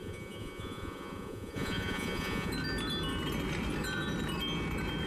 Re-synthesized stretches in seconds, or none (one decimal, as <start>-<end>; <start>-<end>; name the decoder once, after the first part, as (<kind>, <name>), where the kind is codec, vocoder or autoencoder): 0.0-2.5 (vocoder, Vocos)